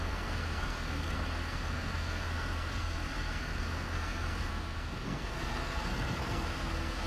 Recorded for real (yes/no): no